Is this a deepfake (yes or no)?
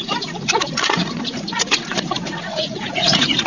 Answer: yes